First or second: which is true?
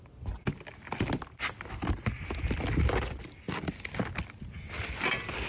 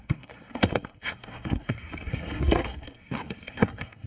first